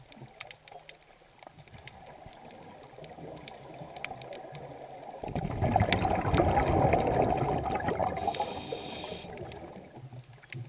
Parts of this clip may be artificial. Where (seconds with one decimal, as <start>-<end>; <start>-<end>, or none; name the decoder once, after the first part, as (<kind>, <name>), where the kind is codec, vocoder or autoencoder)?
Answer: none